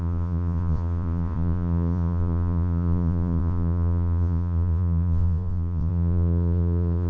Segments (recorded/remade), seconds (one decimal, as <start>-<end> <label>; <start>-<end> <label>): 0.0-7.1 remade

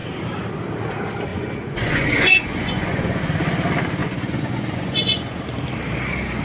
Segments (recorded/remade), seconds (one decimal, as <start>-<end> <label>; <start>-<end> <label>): 0.0-1.3 recorded; 1.3-3.2 remade; 3.2-4.0 recorded; 4.0-5.4 remade; 5.4-6.4 recorded